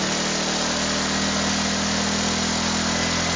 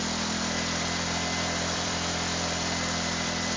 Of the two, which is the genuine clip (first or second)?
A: first